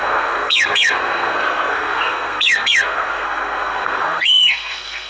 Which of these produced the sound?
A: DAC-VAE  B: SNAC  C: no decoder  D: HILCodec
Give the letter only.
B